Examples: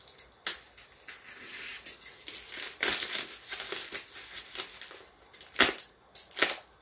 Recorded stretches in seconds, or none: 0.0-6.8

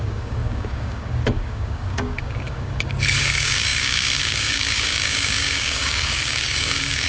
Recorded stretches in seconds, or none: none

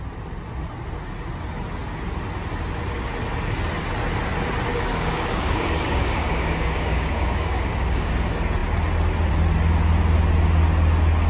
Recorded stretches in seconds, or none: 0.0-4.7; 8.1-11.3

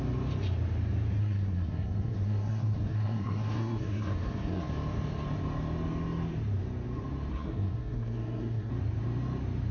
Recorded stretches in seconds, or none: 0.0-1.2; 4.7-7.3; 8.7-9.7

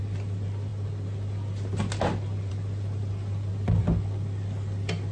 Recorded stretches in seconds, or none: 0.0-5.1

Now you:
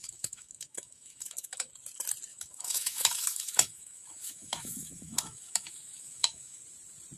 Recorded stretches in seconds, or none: 1.7-2.3; 6.6-7.2

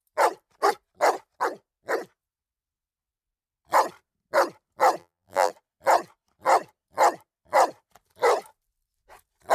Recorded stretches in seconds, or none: 0.0-5.0; 5.5-9.5

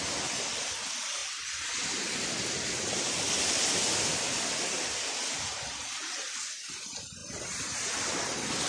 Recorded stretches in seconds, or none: 0.0-8.7